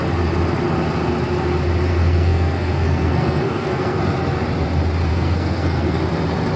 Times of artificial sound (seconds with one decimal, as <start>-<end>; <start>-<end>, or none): 1.9-4.0; 5.1-6.0